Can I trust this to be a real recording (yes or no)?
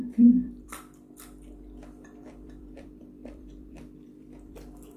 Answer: no